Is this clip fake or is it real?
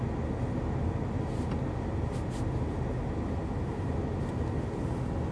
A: real